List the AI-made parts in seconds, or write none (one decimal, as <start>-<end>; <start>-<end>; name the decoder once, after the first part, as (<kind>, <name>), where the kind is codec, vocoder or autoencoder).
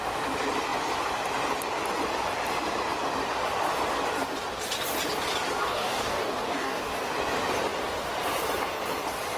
5.6-6.9 (codec, DAC)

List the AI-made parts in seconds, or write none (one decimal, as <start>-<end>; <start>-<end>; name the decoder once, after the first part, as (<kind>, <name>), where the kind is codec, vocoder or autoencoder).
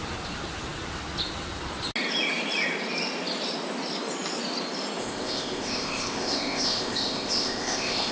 5.0-8.1 (codec, ZipCodec)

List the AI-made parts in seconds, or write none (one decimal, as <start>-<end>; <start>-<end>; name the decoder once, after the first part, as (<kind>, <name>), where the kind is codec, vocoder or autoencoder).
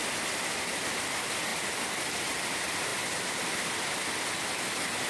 none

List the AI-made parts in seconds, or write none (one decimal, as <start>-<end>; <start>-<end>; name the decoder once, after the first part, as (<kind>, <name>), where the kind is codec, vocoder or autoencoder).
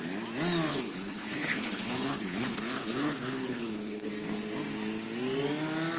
0.7-4.1 (codec, HILCodec)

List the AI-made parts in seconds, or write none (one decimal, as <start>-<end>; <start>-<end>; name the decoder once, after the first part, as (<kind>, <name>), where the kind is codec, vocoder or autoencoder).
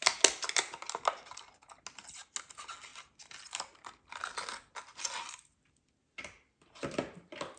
none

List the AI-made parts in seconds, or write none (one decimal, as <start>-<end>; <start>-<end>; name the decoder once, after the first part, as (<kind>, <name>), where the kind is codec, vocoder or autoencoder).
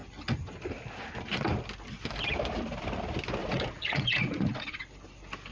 3.4-4.8 (vocoder, Vocos)